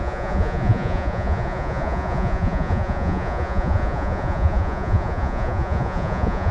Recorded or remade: remade